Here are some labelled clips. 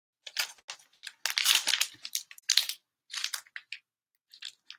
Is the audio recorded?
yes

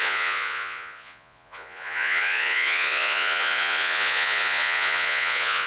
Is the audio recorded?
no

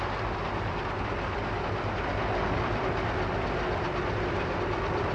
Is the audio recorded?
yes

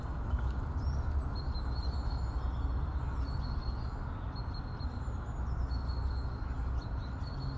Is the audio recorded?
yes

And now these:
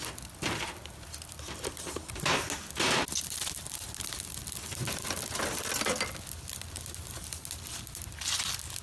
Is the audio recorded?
yes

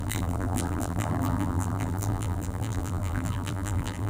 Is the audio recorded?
no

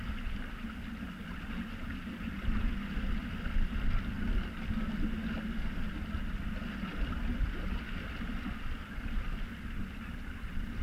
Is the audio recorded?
yes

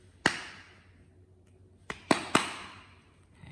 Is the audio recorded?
yes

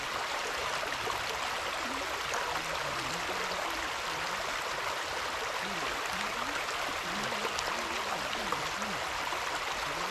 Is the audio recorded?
yes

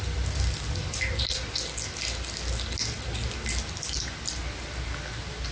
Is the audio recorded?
yes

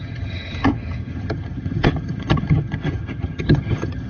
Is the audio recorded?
no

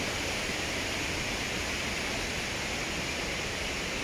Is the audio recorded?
yes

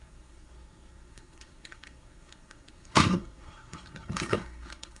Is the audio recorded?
no